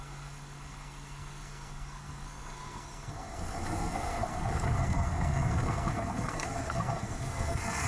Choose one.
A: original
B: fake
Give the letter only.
B